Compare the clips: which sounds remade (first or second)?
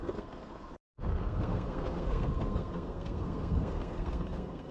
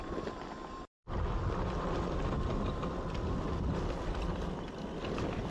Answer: first